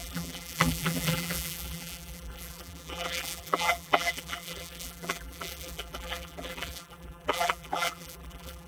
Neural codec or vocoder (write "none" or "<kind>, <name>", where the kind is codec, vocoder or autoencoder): vocoder, BigVGAN v2